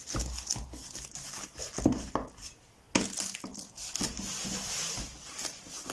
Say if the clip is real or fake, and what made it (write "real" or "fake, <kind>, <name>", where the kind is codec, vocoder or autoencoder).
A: real